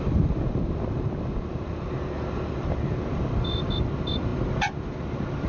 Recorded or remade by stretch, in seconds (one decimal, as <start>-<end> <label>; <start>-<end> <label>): 0.0-5.5 recorded

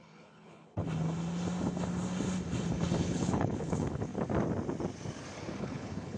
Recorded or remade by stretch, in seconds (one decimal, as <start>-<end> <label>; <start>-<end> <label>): 0.0-0.8 remade; 0.8-3.0 recorded; 3.0-4.1 remade; 4.1-5.6 recorded; 5.6-6.2 remade

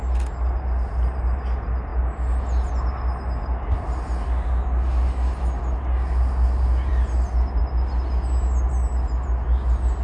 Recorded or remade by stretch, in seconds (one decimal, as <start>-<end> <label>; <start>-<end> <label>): 0.0-10.0 recorded

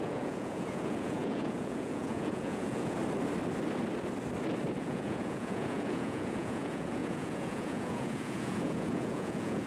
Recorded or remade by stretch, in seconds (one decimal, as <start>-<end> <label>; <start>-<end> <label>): 0.0-3.0 remade; 3.0-4.8 recorded; 4.8-9.7 remade

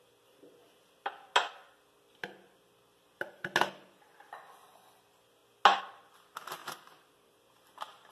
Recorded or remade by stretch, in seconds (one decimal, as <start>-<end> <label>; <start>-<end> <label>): 0.0-6.6 recorded; 6.6-8.1 remade

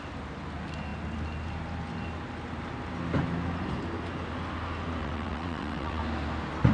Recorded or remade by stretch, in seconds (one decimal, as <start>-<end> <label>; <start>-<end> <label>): 0.0-5.0 recorded; 5.0-6.0 remade; 6.0-6.7 recorded

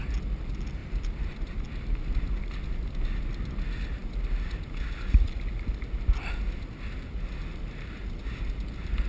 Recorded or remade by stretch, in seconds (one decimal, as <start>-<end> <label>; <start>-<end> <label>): 0.0-9.1 recorded

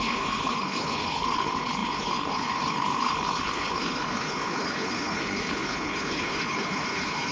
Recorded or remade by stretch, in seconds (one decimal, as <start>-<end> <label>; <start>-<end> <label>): 0.0-7.3 remade